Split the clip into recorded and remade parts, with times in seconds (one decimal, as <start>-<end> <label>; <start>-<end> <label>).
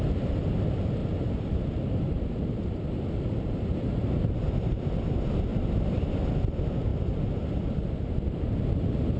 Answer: 0.0-1.0 recorded; 1.0-5.0 remade; 5.0-5.5 recorded; 5.5-6.0 remade; 6.0-9.2 recorded